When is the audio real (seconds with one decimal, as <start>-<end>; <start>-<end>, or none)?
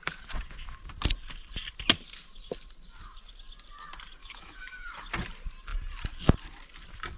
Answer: 0.0-4.2; 4.9-7.2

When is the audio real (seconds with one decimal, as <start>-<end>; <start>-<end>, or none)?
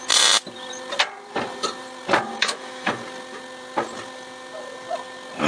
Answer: 0.0-2.4; 2.9-5.5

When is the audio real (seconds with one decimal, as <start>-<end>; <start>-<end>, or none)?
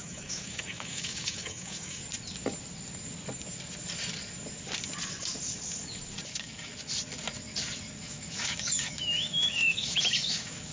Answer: 2.0-6.3; 6.7-8.0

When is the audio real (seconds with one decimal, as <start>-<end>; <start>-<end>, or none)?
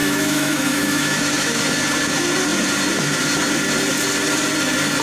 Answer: 1.6-5.0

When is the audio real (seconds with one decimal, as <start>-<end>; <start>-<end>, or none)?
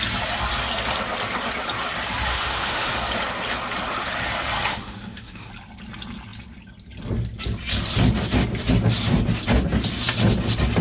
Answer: 0.0-2.3; 2.9-4.7; 5.5-10.8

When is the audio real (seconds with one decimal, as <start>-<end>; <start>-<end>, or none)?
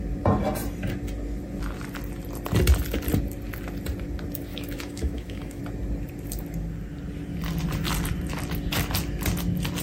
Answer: 0.0-4.5; 5.6-9.8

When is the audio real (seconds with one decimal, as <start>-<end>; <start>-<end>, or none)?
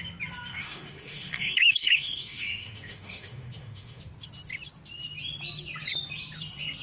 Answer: 0.0-0.5; 4.0-6.8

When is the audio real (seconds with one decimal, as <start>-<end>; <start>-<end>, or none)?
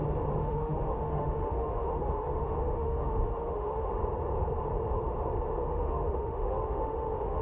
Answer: 0.0-0.4; 3.9-5.6